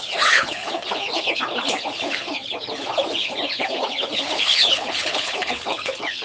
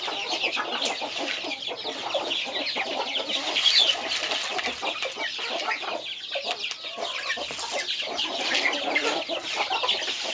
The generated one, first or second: first